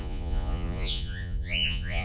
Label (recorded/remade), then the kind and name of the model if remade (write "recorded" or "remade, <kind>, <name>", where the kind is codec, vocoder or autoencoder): remade, vocoder, Vocos